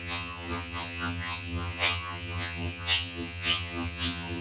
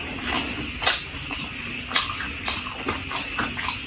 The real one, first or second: second